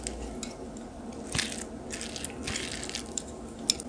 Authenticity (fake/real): real